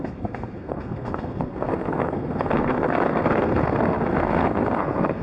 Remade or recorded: remade